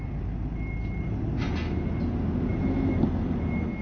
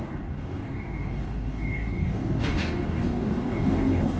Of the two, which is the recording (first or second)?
first